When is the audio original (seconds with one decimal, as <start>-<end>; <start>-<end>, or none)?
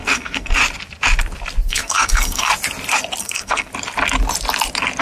0.6-1.7; 2.5-3.2; 3.7-5.0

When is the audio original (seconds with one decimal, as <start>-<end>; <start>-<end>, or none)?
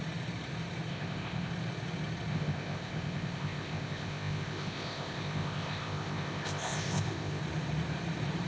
0.0-0.9; 1.5-2.3; 7.4-8.5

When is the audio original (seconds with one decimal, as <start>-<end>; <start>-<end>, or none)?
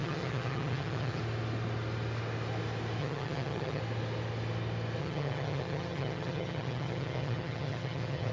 1.2-3.0; 3.8-5.0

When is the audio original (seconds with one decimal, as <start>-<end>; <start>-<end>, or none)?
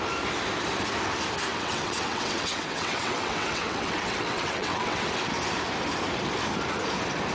0.0-1.5; 5.1-7.3